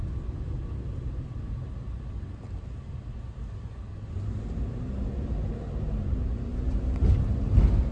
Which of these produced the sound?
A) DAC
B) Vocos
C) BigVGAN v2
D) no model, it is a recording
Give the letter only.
D